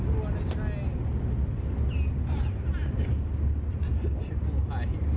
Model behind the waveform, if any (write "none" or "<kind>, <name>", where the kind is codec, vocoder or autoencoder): none